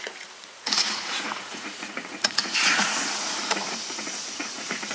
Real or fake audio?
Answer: fake